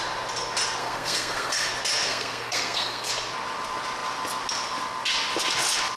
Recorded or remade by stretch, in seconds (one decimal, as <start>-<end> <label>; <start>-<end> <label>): 0.0-0.8 recorded; 0.8-1.7 remade; 1.7-2.1 recorded; 2.1-3.1 remade; 3.1-6.0 recorded